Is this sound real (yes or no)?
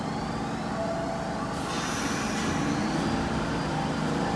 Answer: yes